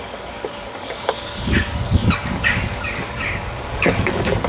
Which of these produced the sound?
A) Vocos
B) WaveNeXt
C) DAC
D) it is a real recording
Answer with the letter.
C